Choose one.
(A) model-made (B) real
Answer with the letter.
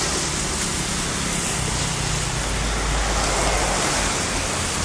B